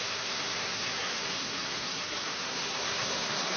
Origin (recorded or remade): remade